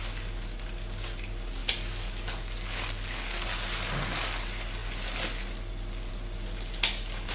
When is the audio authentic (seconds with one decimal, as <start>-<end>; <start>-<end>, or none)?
0.0-1.6; 3.4-7.3

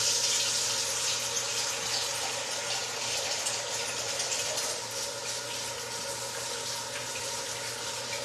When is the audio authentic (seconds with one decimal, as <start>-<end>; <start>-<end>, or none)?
0.0-2.8; 5.2-8.2

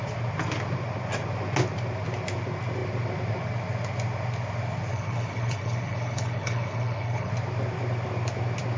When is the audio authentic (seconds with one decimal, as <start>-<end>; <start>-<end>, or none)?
0.0-4.9; 7.3-8.8

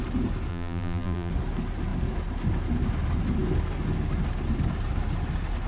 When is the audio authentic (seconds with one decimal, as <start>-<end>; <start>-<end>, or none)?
0.0-0.5; 1.3-5.7

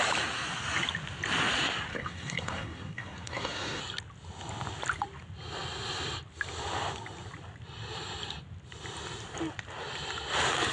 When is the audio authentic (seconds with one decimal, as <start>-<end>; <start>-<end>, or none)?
0.0-1.9; 3.8-10.7